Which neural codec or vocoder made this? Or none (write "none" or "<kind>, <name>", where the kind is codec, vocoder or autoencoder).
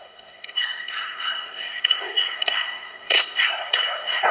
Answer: codec, SNAC